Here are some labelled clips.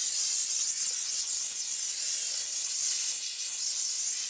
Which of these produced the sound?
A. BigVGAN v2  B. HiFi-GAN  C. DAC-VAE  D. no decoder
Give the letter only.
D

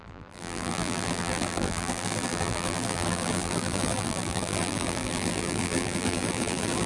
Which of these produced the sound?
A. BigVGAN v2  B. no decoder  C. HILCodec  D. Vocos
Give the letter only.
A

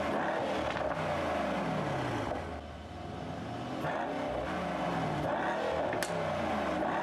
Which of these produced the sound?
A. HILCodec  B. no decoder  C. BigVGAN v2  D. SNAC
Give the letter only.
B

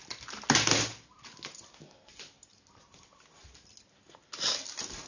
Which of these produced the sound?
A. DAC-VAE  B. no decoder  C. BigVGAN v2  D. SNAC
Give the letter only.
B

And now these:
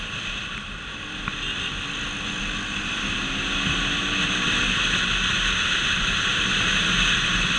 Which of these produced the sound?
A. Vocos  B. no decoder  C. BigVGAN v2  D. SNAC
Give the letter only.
B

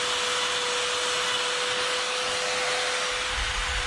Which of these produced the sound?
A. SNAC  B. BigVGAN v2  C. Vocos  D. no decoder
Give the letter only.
D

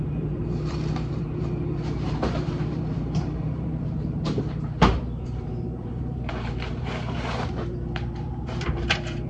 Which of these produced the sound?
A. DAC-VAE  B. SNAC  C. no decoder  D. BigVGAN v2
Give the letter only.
D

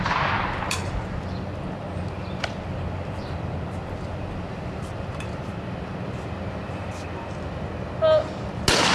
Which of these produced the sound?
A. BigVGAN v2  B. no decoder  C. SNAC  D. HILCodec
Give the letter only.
B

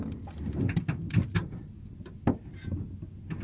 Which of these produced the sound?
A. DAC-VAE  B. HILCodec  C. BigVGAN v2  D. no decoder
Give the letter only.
D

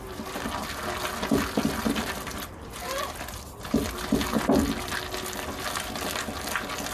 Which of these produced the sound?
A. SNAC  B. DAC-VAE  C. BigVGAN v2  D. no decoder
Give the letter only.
D